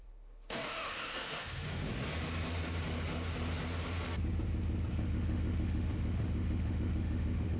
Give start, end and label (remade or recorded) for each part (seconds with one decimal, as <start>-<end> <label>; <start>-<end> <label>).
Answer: 0.0-1.9 remade; 1.9-4.9 recorded; 4.9-7.6 remade